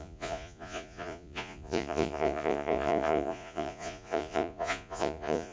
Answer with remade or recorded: remade